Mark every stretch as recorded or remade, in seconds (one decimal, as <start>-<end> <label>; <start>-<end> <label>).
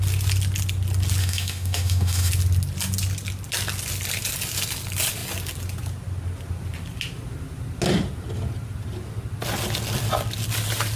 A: 0.0-1.2 recorded; 1.2-2.3 remade; 2.3-11.0 recorded